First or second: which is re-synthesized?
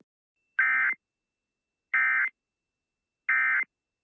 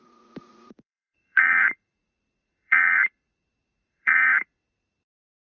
second